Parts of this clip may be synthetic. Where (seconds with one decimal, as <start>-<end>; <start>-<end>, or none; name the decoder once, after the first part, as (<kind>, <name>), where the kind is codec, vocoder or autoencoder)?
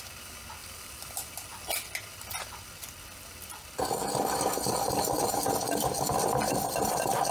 0.6-3.9 (vocoder, BigVGAN v2)